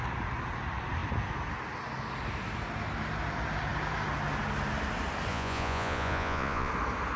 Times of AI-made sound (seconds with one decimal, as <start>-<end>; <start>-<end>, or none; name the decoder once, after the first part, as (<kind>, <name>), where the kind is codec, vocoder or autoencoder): 5.3-6.7 (vocoder, Vocos)